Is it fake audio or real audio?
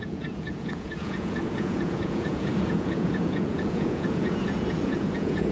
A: fake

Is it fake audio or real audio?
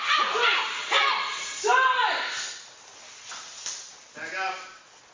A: real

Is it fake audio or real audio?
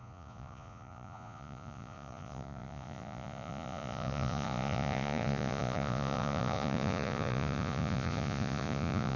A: fake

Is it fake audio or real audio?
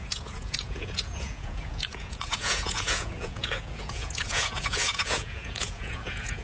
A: fake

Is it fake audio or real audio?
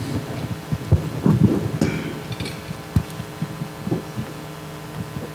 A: real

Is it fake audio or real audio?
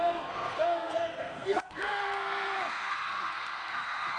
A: fake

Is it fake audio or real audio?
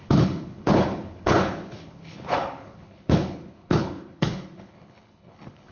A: fake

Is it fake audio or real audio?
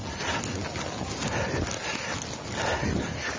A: real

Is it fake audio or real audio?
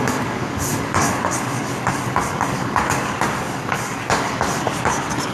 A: fake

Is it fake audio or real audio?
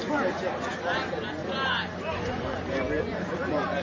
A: real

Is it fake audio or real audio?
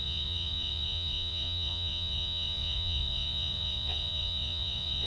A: fake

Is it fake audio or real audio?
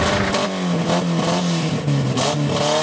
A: real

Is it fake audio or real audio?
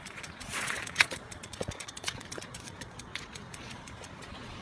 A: fake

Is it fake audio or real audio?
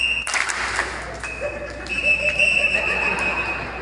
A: real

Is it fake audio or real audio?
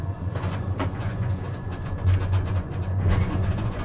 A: fake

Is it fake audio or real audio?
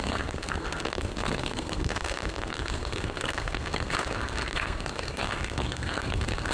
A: fake